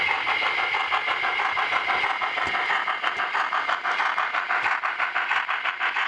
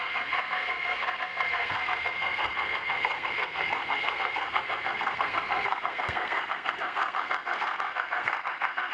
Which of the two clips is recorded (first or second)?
first